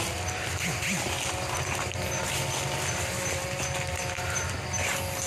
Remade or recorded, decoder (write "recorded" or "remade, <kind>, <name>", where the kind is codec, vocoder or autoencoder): recorded